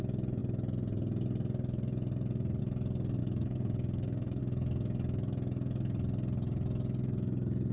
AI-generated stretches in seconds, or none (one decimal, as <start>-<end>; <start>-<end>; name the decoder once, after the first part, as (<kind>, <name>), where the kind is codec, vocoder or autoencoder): 3.2-4.4 (codec, DAC)